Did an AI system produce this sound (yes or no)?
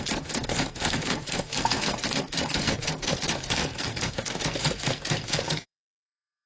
yes